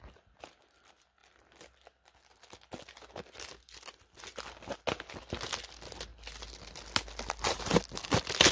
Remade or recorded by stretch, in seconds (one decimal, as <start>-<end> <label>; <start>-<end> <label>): 0.0-8.5 recorded